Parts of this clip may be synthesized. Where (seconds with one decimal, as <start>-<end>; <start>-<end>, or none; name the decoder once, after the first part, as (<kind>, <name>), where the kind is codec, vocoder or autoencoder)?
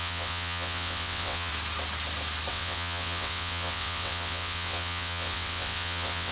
0.0-1.5 (vocoder, WaveNeXt); 2.5-6.3